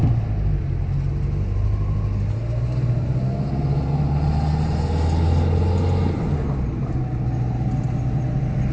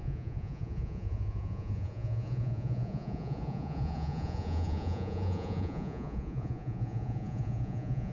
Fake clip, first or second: second